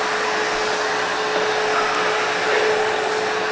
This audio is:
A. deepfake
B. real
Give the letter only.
B